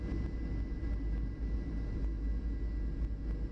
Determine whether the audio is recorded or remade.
recorded